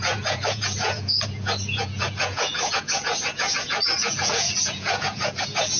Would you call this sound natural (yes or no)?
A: no